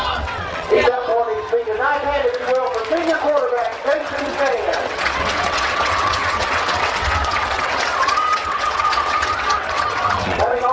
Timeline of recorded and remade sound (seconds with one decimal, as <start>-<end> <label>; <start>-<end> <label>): 0.0-1.1 remade; 1.1-2.9 recorded; 2.9-10.7 remade